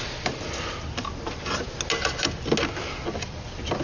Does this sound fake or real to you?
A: real